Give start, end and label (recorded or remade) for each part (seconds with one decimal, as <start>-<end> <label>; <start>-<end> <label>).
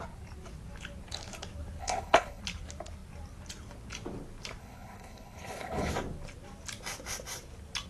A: 0.0-1.8 recorded; 1.8-2.4 remade; 2.4-4.6 recorded; 4.6-5.9 remade; 5.9-7.9 recorded